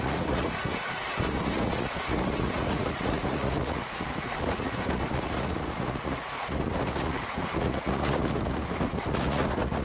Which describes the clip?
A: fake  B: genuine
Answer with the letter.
A